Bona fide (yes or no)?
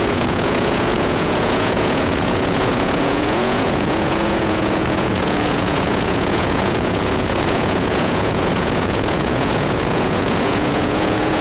no